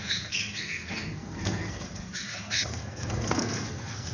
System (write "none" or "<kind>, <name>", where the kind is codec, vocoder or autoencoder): codec, SNAC